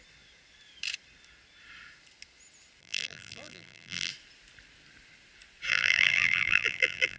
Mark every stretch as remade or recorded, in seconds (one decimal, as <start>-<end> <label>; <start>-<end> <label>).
0.0-2.8 recorded; 2.8-4.1 remade; 4.1-5.7 recorded; 5.7-7.2 remade

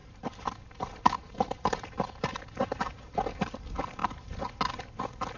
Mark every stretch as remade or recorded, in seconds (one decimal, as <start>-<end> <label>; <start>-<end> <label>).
0.0-2.8 remade; 2.8-5.4 recorded

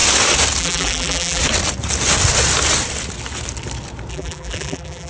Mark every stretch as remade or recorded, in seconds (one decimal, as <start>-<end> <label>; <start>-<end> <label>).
0.0-0.6 recorded; 0.6-1.4 remade; 1.4-4.1 recorded; 4.1-5.1 remade